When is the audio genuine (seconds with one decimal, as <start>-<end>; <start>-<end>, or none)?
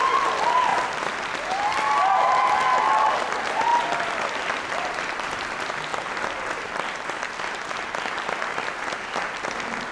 0.7-3.1; 5.9-6.4